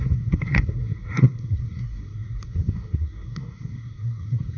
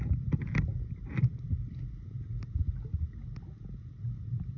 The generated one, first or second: first